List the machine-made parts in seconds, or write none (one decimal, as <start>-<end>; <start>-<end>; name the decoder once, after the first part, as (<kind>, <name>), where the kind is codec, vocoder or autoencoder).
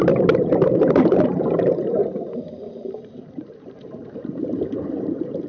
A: 0.0-5.5 (vocoder, BigVGAN v2)